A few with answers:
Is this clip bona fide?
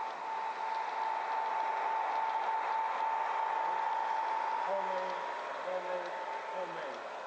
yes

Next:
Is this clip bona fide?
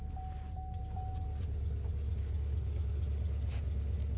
yes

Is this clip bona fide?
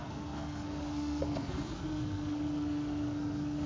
no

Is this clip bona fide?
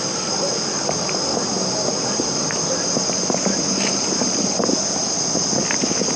yes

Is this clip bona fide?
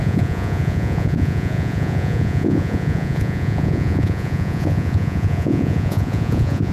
no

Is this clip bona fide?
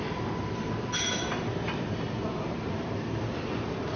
yes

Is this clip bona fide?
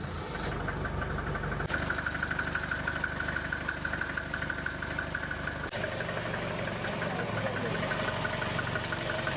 yes